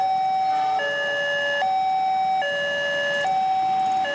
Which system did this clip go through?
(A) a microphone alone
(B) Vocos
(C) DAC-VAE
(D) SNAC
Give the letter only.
A